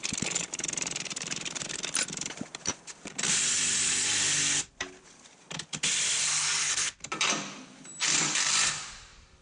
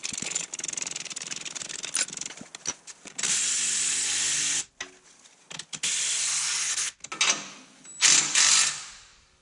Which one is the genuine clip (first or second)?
second